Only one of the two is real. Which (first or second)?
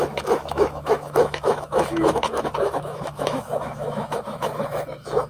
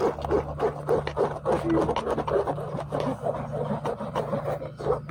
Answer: second